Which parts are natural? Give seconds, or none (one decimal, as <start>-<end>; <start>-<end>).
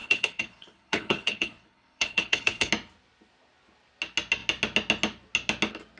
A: 2.7-6.0